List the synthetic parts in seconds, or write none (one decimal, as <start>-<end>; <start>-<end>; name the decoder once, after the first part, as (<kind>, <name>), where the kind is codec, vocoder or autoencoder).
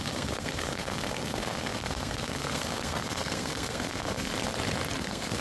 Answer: 0.0-4.3 (codec, SNAC); 5.0-5.4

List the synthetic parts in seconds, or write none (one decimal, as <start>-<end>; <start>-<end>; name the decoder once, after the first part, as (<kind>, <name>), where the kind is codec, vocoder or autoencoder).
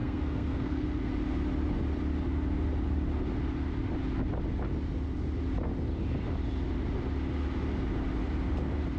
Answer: 0.0-1.1 (codec, SNAC)